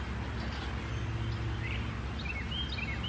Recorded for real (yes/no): yes